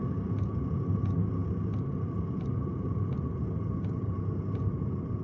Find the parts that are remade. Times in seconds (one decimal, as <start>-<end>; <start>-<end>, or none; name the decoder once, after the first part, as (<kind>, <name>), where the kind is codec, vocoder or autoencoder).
none